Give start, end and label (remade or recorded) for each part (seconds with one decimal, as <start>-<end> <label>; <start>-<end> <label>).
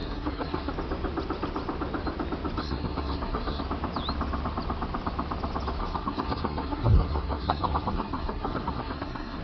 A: 0.0-0.7 remade; 0.7-2.6 recorded; 2.6-3.6 remade; 3.6-5.8 recorded; 5.8-9.4 remade